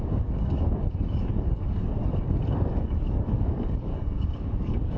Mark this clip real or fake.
fake